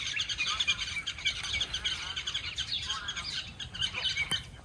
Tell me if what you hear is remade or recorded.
recorded